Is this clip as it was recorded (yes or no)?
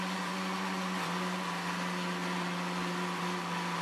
yes